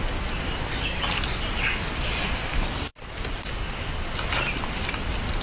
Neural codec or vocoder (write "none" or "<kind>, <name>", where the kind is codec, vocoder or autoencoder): none